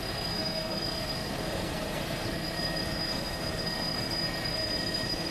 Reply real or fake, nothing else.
fake